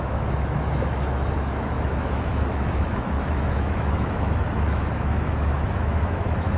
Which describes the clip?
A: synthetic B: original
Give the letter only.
A